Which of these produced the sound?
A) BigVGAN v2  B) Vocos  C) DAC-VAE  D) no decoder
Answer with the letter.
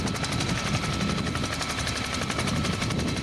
D